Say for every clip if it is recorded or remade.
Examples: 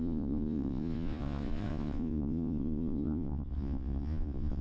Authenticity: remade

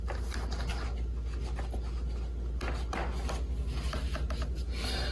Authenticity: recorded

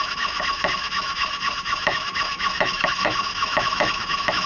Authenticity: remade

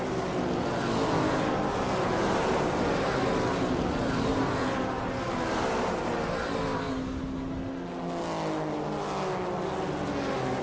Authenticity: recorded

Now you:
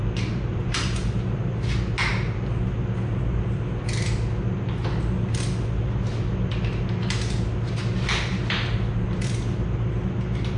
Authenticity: recorded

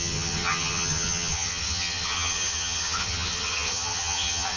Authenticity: remade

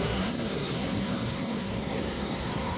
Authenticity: remade